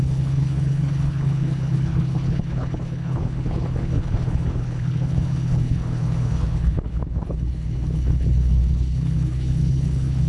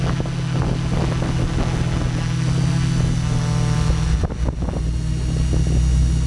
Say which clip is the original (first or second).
second